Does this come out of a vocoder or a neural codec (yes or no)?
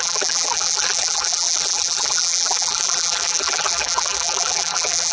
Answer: yes